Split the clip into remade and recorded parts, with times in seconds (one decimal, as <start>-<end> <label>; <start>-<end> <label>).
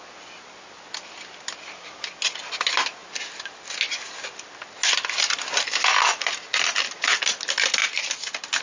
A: 0.0-8.6 recorded